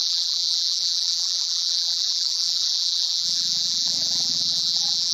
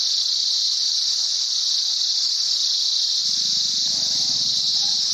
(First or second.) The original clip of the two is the second